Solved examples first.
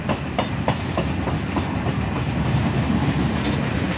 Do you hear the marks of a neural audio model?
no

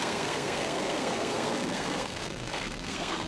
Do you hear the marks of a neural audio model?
yes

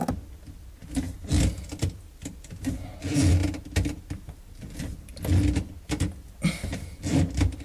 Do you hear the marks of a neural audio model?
no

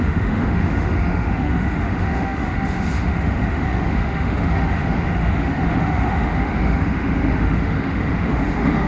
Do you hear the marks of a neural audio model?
yes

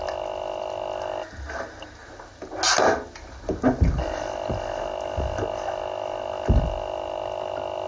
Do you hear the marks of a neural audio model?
no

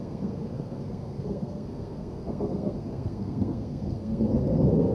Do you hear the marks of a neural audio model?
yes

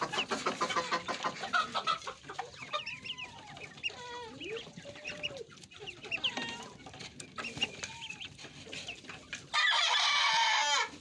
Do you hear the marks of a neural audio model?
no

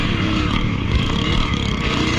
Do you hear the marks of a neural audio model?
yes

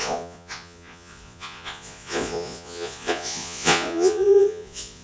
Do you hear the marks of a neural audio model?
yes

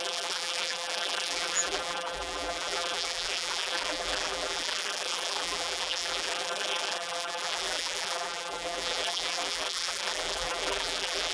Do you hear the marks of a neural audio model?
yes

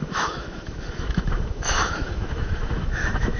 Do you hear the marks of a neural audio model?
yes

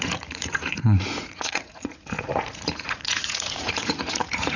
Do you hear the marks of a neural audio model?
yes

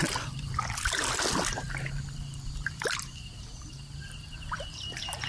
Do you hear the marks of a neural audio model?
no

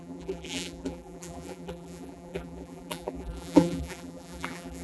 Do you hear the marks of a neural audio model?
yes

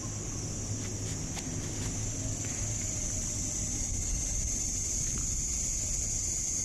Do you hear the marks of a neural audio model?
no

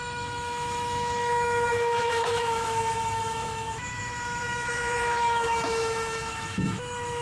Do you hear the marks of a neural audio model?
yes